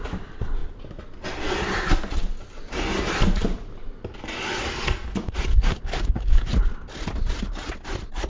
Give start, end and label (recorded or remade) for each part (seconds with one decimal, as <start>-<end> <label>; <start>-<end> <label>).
0.0-5.5 recorded; 5.5-6.5 remade; 6.5-8.3 recorded